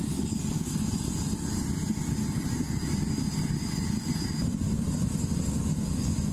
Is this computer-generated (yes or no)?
no